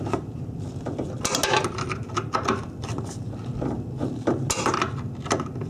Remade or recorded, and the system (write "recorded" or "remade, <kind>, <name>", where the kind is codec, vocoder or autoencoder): recorded